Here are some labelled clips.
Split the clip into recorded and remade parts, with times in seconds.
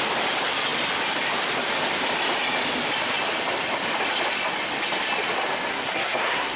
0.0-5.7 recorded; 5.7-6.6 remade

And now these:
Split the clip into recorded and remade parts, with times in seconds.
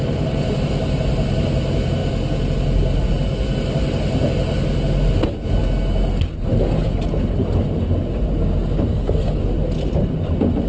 0.0-8.9 recorded; 8.9-9.4 remade; 9.4-10.7 recorded